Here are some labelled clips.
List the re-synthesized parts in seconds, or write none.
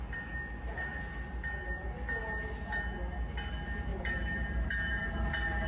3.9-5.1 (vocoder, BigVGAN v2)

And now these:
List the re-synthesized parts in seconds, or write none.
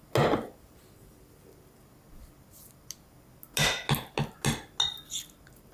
none